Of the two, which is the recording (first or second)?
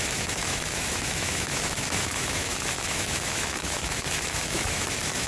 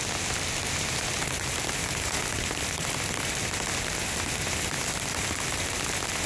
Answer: second